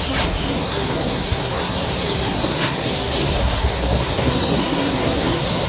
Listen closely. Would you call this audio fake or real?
fake